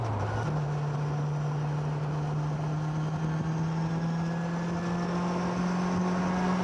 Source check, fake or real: real